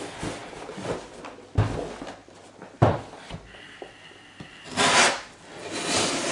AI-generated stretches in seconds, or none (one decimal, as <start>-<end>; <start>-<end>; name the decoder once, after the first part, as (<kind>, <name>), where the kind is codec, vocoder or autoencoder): 2.2-6.3 (vocoder, BigVGAN v2)